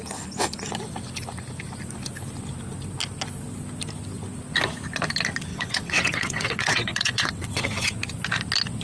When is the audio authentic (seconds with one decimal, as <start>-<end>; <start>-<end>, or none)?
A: 0.0-5.5; 7.9-8.8